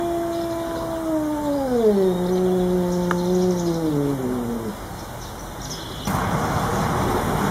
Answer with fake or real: real